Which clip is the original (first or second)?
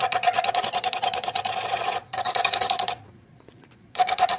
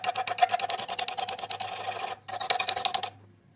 second